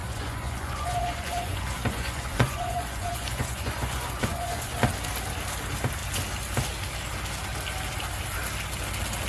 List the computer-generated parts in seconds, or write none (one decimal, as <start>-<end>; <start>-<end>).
0.0-4.7